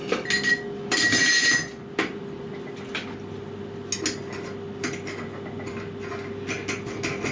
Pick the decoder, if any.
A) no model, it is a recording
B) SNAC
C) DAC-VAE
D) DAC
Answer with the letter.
A